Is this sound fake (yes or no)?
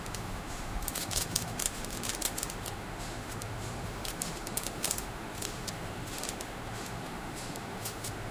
yes